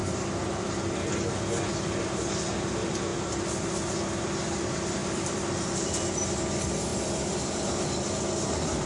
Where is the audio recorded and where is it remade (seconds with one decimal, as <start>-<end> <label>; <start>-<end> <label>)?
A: 0.0-0.6 remade; 0.6-5.0 recorded; 5.0-6.3 remade; 6.3-6.9 recorded; 6.9-8.9 remade